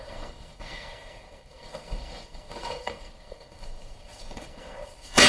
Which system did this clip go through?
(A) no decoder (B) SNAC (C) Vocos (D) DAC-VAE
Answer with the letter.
B